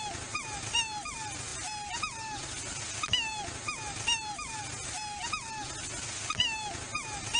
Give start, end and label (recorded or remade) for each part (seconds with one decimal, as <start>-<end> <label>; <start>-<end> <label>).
0.0-7.4 recorded